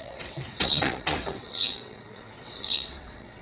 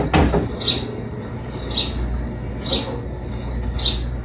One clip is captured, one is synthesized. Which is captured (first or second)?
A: second